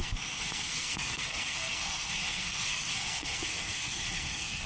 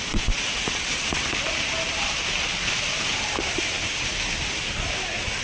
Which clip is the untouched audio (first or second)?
second